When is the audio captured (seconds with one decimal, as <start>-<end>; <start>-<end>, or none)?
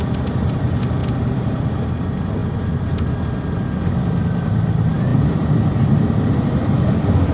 2.4-4.2